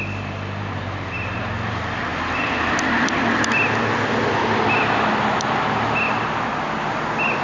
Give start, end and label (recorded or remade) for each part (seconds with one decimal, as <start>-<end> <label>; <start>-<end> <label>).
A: 0.0-7.4 recorded